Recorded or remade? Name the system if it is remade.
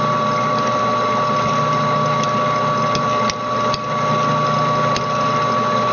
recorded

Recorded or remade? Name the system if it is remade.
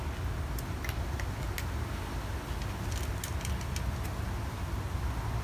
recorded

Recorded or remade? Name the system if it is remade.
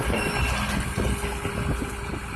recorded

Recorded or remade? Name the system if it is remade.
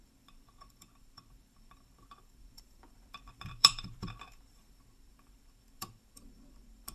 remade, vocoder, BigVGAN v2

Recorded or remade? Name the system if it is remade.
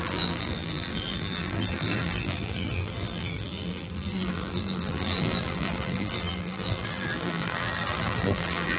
remade, vocoder, BigVGAN v2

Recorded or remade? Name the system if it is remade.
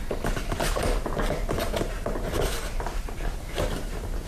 recorded